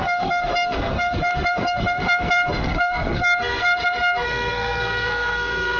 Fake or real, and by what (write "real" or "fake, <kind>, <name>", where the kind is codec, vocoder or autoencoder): fake, codec, SNAC